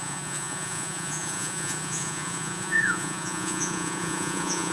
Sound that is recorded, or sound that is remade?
remade